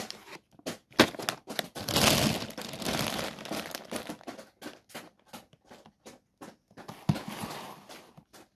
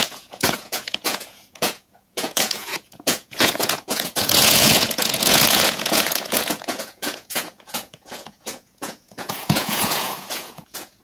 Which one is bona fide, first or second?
first